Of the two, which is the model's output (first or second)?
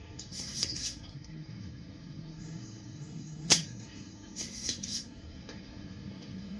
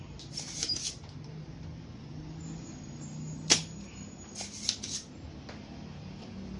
first